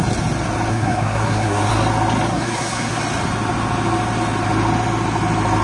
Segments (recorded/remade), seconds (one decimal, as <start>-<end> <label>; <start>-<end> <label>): 0.0-0.7 recorded; 0.7-1.7 remade; 1.7-2.3 recorded; 2.3-3.0 remade; 3.0-5.6 recorded

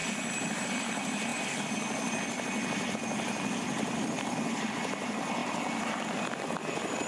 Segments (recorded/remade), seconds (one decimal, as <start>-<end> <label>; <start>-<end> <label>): 0.0-0.6 remade; 0.6-7.1 recorded

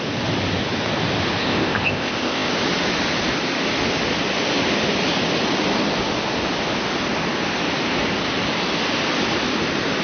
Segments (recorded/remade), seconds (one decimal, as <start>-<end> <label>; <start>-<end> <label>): 0.0-1.4 recorded; 1.4-2.5 remade; 2.5-10.0 recorded

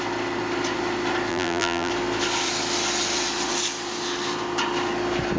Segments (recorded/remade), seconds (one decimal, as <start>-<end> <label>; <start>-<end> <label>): 0.0-1.3 recorded; 1.3-1.9 remade; 1.9-5.4 recorded

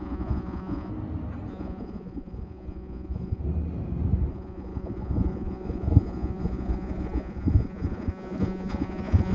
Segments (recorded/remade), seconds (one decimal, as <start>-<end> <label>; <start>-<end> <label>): 0.0-0.9 remade; 0.9-1.5 recorded; 1.5-3.4 remade; 3.4-4.3 recorded; 4.3-9.3 remade

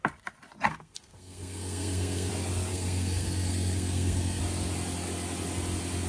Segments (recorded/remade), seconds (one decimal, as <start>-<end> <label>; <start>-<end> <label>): 0.0-0.7 recorded; 0.7-2.3 remade; 2.3-2.7 recorded; 2.7-4.4 remade; 4.4-6.1 recorded

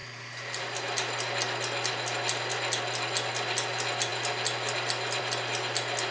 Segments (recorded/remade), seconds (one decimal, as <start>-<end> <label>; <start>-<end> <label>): 0.0-6.1 recorded

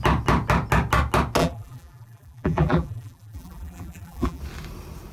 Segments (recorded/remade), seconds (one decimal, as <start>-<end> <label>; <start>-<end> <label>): 0.0-1.4 recorded; 1.4-4.4 remade; 4.4-5.1 recorded